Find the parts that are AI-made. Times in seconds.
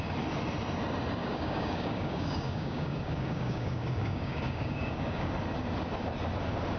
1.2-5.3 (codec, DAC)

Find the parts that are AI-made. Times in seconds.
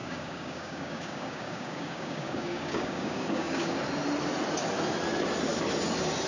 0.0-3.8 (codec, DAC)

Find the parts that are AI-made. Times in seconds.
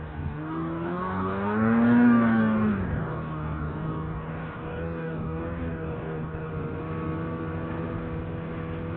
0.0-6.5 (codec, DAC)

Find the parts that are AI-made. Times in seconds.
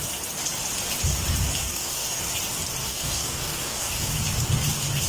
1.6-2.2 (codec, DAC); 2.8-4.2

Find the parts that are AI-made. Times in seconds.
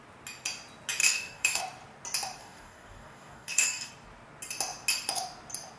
1.0-1.6 (codec, DAC); 2.4-3.9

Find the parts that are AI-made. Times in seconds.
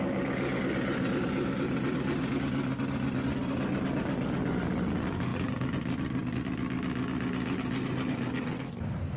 none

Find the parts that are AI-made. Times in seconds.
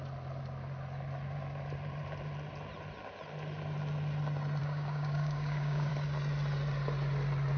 4.6-5.9 (codec, DAC)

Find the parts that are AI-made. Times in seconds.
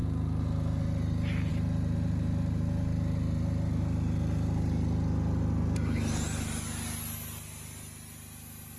none